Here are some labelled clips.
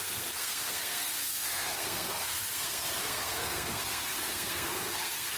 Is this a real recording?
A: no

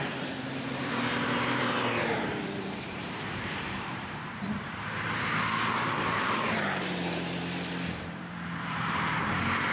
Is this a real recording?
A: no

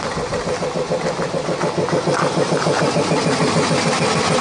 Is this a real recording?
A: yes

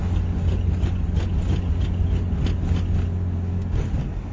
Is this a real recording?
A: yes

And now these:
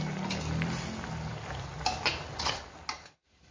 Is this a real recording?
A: yes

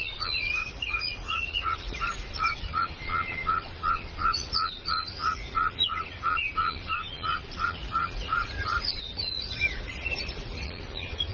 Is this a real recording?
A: no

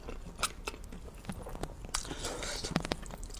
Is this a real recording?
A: yes